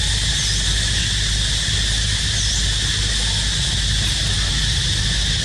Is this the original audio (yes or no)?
yes